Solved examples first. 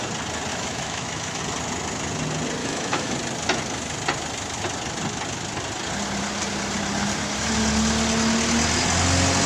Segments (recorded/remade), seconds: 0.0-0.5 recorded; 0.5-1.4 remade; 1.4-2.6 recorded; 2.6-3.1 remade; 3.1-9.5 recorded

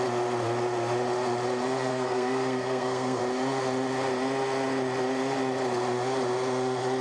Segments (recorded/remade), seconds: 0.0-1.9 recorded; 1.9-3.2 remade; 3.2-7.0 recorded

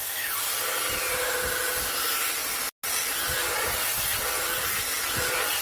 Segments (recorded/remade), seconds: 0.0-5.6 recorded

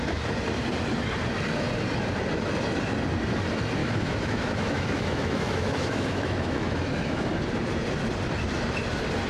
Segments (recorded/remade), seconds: 0.0-3.8 recorded; 3.8-7.3 remade; 7.3-9.3 recorded

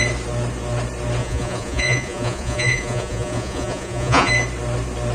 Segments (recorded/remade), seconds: 0.0-1.2 recorded; 1.2-4.3 remade; 4.3-5.1 recorded

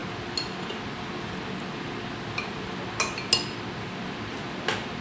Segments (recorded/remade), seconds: 0.0-5.0 recorded

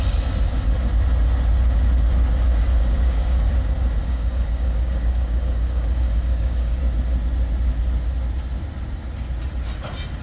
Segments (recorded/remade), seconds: 0.0-2.8 recorded; 2.8-3.5 remade; 3.5-4.0 recorded; 4.0-6.8 remade; 6.8-10.2 recorded

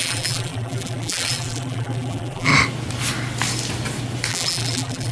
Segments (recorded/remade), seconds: 0.0-2.5 remade; 2.5-4.3 recorded; 4.3-5.1 remade